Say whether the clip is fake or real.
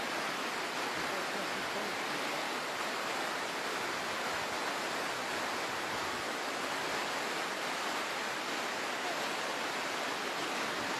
real